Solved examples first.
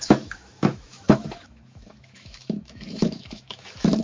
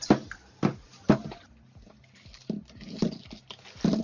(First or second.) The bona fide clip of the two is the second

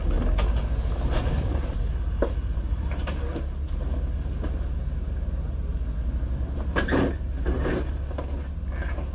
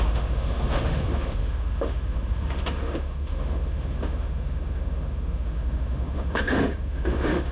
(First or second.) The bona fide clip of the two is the first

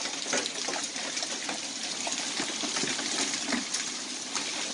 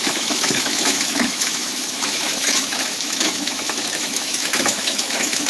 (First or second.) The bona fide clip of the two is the first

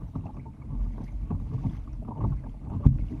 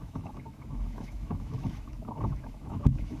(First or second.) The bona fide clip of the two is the first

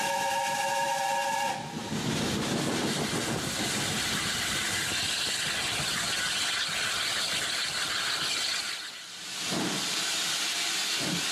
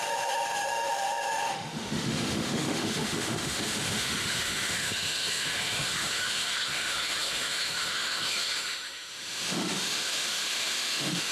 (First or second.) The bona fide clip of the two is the first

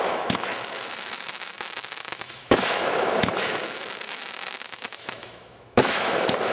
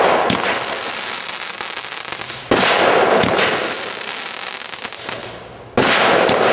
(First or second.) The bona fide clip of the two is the second